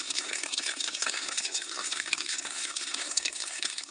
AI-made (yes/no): yes